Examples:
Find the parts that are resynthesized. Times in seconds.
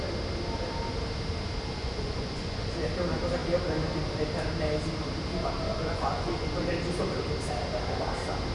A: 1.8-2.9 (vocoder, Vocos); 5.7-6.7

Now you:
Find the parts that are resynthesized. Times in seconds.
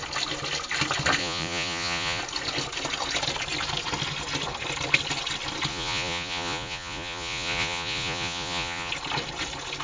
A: 1.2-2.2 (vocoder, Vocos); 5.7-8.9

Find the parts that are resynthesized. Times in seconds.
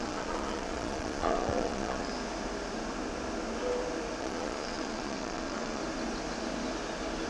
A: 0.0-2.1 (vocoder, Vocos); 4.2-5.8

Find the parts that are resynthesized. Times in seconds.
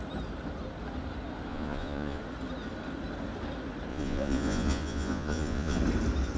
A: 1.5-2.2 (vocoder, Vocos); 3.9-5.8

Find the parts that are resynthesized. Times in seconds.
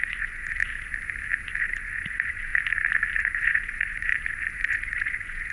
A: 0.0-0.6 (vocoder, Vocos); 1.6-2.5; 3.2-4.1; 4.7-5.5